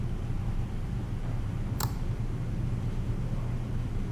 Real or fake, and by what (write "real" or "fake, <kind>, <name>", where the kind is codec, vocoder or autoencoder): real